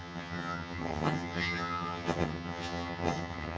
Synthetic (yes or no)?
yes